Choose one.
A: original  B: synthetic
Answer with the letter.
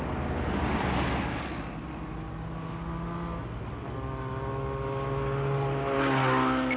A